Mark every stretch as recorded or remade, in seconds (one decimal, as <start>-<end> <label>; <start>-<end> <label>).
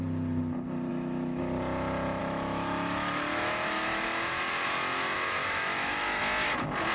0.0-0.9 recorded; 0.9-1.4 remade; 1.4-2.2 recorded; 2.2-6.2 remade; 6.2-6.9 recorded